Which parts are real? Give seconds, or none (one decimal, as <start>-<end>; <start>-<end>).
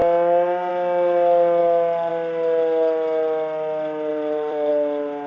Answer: 0.0-4.1; 4.7-5.3